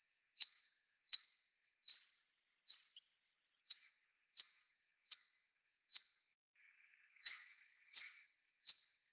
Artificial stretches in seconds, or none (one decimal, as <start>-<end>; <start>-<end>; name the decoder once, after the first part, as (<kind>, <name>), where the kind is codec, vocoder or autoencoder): 0.0-1.9 (codec, SNAC); 3.6-9.1